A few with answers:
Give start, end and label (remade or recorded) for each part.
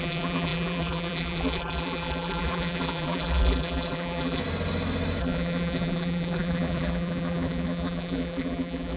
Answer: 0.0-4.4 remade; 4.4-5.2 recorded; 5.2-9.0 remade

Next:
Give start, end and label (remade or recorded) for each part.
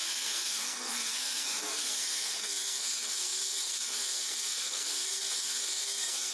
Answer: 0.0-6.3 remade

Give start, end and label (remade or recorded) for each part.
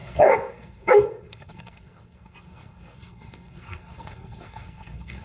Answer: 0.0-5.2 remade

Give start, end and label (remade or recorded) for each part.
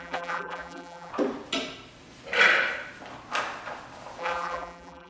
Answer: 0.0-1.1 remade; 1.1-4.2 recorded; 4.2-5.1 remade